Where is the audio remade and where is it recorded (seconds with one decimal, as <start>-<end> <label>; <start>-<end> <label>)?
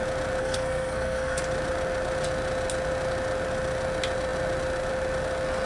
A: 0.0-0.4 recorded; 0.4-1.4 remade; 1.4-5.7 recorded